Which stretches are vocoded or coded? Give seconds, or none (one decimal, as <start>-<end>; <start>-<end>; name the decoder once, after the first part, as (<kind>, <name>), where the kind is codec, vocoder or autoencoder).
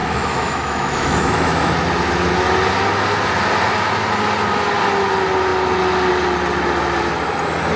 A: 0.0-1.7 (autoencoder, DAC-VAE)